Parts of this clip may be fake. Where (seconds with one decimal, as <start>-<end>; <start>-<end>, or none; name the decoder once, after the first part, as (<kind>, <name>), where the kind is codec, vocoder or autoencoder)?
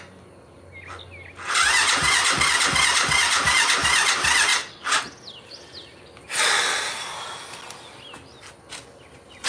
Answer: none